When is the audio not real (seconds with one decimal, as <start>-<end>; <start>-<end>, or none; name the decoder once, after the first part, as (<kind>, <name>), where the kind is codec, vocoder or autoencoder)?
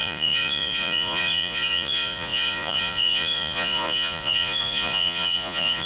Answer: 0.0-5.9 (vocoder, Vocos)